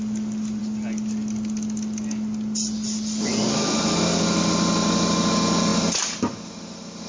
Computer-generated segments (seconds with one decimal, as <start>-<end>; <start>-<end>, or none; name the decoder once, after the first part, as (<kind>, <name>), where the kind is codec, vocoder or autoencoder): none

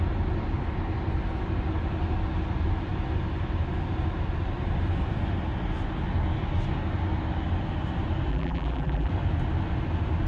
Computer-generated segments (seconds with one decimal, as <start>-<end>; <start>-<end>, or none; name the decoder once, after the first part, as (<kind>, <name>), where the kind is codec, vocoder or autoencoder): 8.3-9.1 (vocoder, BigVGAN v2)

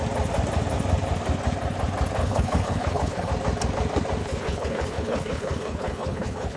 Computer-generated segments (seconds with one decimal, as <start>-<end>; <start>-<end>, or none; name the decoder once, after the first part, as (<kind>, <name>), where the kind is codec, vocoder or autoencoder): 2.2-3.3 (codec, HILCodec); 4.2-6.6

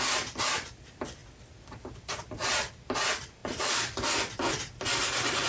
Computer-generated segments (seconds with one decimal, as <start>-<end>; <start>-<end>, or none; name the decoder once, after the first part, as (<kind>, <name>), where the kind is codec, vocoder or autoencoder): 0.0-1.2 (vocoder, BigVGAN v2); 2.0-5.5

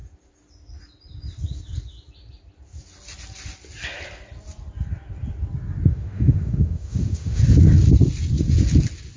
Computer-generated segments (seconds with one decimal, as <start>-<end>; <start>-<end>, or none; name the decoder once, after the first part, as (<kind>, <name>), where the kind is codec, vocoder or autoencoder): 5.9-7.4 (autoencoder, DAC-VAE)